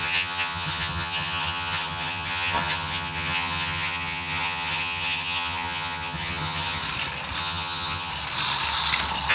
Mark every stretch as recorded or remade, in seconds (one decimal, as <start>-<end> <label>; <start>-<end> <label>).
0.0-6.8 remade; 6.8-7.4 recorded; 7.4-8.1 remade; 8.1-9.3 recorded